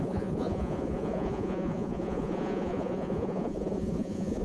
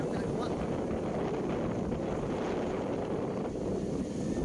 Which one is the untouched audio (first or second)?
second